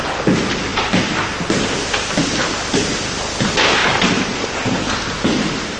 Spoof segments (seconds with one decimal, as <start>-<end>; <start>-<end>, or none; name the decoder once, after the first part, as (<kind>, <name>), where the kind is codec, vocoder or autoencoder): none